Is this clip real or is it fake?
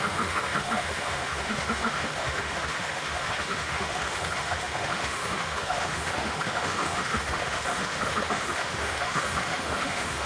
fake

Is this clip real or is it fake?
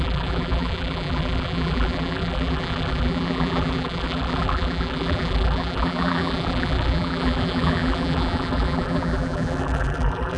fake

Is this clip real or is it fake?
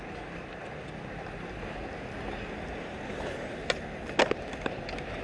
real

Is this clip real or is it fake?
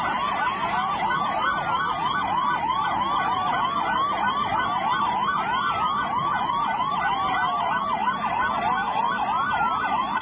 real